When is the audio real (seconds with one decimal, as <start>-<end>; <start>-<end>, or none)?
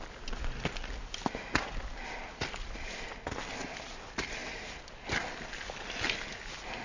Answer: 0.0-6.8